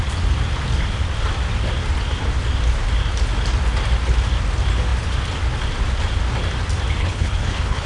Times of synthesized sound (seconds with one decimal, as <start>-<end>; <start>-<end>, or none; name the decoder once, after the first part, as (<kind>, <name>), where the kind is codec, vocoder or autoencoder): 7.0-7.9 (codec, HILCodec)

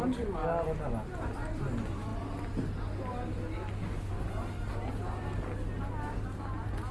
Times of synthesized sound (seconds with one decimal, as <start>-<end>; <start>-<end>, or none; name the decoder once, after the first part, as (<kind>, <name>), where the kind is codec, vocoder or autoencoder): none

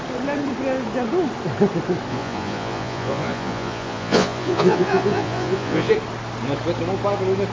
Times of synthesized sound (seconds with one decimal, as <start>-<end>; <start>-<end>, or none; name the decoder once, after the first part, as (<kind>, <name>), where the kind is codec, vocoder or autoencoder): 2.1-5.9 (vocoder, Vocos)

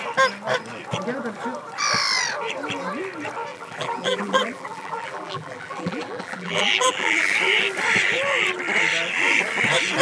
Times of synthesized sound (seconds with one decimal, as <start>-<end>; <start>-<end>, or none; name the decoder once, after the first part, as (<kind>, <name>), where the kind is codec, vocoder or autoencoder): 3.5-7.3 (vocoder, BigVGAN v2)

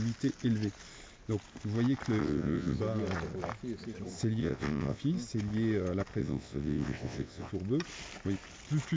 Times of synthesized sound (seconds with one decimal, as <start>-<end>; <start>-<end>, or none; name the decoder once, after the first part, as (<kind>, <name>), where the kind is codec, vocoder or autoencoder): 2.2-2.8 (vocoder, WaveNeXt); 4.4-5.0; 6.2-7.5

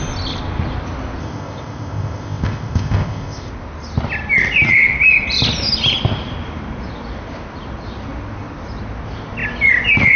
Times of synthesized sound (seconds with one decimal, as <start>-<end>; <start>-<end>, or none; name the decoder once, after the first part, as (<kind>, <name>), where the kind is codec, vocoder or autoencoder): 1.2-3.5 (codec, ZipCodec)